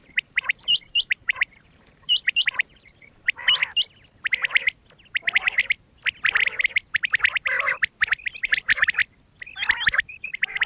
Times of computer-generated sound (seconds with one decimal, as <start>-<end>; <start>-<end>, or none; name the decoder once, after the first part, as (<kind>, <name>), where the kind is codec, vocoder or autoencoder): 0.0-3.6 (vocoder, BigVGAN v2); 8.4-9.0; 10.0-10.7